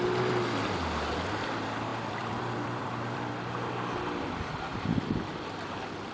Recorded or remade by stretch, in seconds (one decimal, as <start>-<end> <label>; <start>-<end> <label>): 0.0-1.9 recorded; 1.9-3.3 remade; 3.3-6.1 recorded